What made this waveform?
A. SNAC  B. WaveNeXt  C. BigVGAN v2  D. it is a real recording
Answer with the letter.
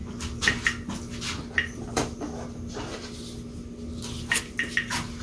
D